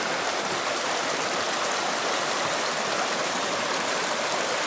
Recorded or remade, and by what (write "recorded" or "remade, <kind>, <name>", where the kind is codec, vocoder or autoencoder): recorded